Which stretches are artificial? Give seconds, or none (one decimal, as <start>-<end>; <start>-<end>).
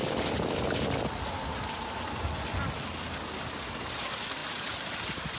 none